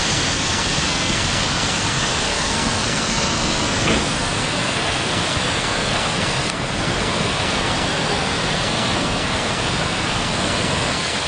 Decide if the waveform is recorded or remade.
remade